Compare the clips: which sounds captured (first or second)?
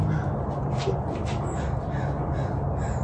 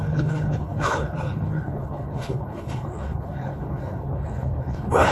first